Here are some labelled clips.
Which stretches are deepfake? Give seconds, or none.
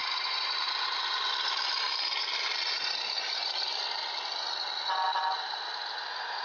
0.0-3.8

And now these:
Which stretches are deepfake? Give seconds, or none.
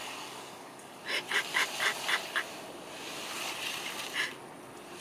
0.0-1.0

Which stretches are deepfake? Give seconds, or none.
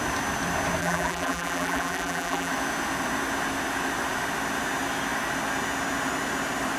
0.8-2.5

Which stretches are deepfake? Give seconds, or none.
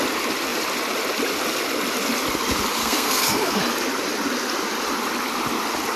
2.8-3.6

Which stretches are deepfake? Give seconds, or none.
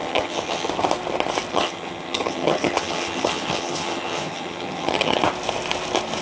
0.0-0.7; 1.5-5.2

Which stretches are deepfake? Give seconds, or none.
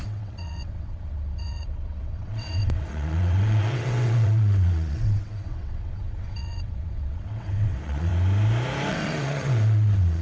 0.0-8.1; 8.9-10.2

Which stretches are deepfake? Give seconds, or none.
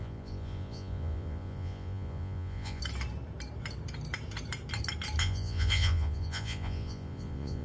0.0-2.8; 5.2-7.6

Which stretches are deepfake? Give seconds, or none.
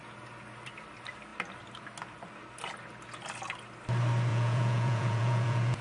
4.3-5.8